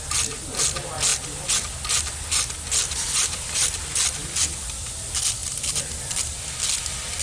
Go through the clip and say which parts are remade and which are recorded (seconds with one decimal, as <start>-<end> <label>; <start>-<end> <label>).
0.0-2.8 recorded; 2.8-4.4 remade; 4.4-5.4 recorded; 5.4-6.5 remade; 6.5-7.2 recorded